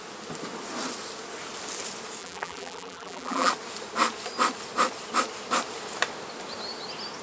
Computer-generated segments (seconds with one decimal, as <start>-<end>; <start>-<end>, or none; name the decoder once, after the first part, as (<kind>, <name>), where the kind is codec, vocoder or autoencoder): 2.2-3.5 (vocoder, BigVGAN v2)